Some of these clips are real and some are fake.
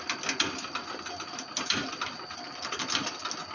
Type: real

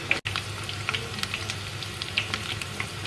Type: real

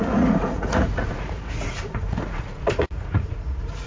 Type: fake